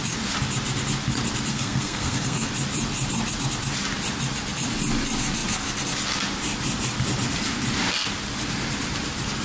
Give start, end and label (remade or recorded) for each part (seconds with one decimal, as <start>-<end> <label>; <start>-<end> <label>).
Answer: 0.0-1.5 recorded; 1.5-2.5 remade; 2.5-9.4 recorded